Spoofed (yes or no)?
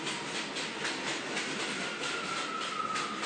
no